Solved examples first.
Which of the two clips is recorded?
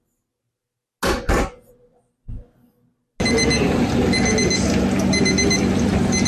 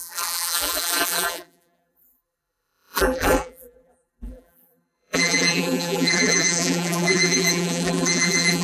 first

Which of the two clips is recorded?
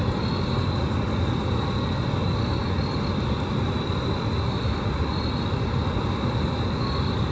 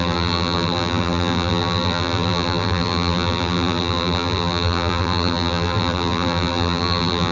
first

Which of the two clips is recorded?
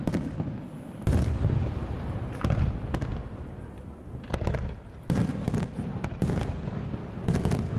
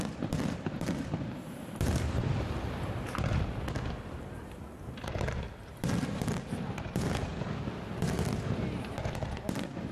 first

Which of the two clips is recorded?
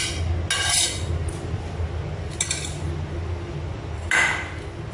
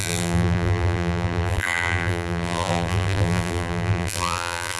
first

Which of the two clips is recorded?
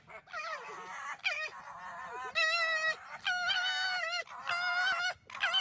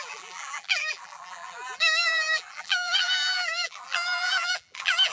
first